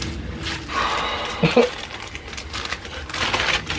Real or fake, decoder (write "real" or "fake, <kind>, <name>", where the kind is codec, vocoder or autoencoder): real